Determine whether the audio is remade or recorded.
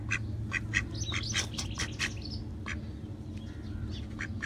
recorded